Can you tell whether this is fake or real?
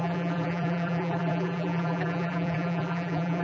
fake